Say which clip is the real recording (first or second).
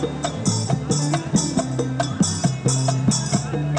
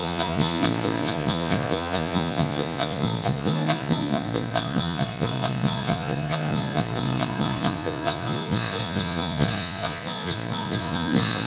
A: first